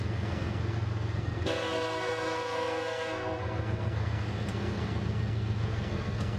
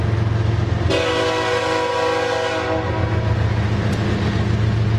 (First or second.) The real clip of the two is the second